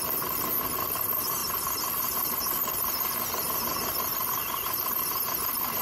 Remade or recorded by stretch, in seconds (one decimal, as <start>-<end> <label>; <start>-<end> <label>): 0.0-5.8 recorded